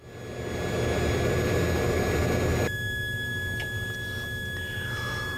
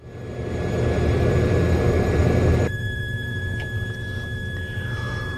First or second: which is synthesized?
second